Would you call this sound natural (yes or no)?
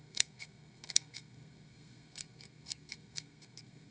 no